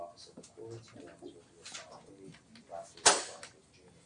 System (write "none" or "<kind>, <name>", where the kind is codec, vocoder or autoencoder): none